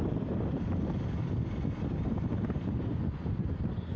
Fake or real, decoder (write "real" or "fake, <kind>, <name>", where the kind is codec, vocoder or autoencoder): real